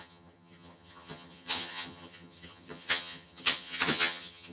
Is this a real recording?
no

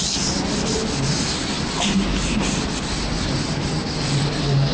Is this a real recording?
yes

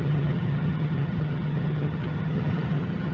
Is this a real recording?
no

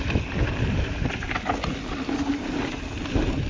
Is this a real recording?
yes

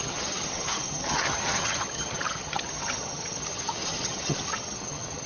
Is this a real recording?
no